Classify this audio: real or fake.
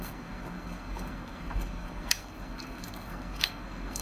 fake